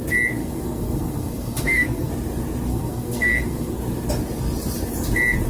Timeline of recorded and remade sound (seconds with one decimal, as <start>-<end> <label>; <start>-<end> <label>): 0.0-0.4 recorded; 0.4-2.1 remade; 2.1-2.7 recorded; 2.7-3.8 remade; 3.8-5.5 recorded